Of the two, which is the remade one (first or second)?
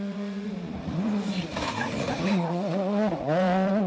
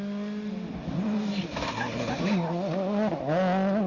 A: first